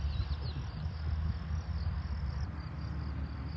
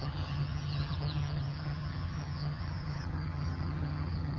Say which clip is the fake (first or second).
second